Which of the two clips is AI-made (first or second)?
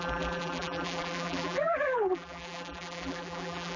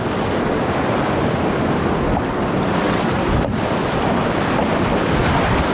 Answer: first